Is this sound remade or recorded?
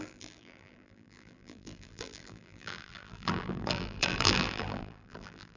remade